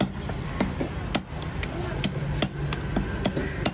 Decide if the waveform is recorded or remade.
recorded